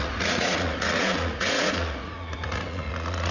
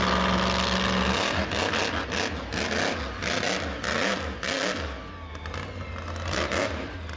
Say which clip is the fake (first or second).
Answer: first